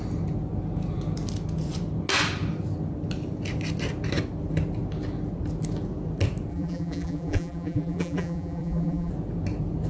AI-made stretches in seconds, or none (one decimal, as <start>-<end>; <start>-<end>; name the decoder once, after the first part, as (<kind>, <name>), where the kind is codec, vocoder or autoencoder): 6.5-9.1 (vocoder, BigVGAN v2)